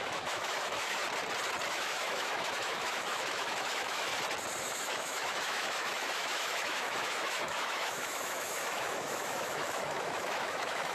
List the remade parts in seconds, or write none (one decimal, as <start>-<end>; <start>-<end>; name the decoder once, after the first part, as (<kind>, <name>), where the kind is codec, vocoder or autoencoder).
0.0-1.0 (autoencoder, DAC-VAE); 1.7-4.1; 4.6-10.9